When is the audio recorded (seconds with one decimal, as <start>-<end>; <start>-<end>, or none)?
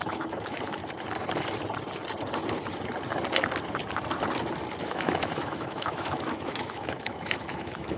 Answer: 0.8-4.8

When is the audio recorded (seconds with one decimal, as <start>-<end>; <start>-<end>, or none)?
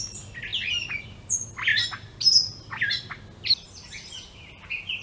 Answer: 0.0-5.0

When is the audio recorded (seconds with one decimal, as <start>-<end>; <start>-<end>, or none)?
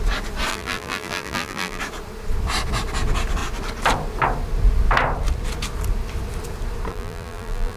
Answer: 0.0-0.5; 1.8-6.9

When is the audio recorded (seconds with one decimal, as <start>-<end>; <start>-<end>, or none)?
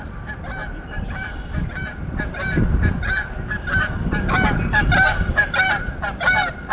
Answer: 0.6-4.6